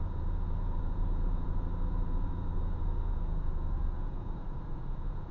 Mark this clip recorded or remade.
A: remade